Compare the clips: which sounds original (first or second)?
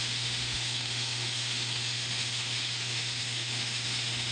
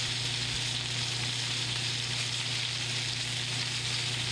second